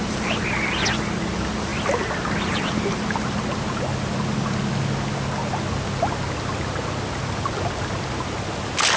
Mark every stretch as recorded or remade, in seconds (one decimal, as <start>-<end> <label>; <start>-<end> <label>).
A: 0.0-9.0 recorded